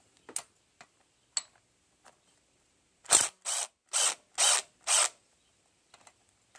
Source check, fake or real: real